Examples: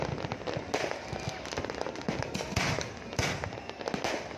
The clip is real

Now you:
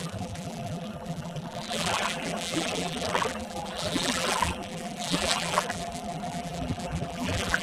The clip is fake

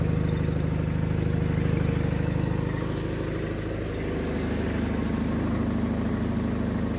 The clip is real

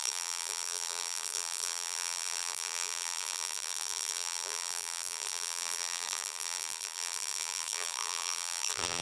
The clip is fake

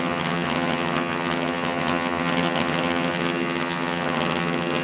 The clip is fake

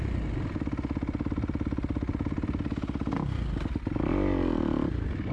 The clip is real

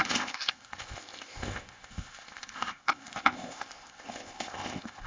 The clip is fake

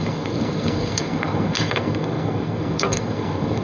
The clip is fake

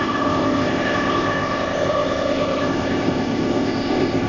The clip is fake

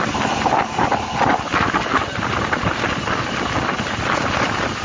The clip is real